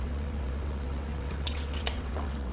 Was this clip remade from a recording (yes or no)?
yes